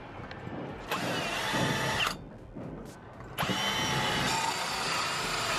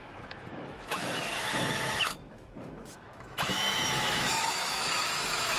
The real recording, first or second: first